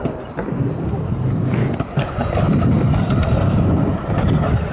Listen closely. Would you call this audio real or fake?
real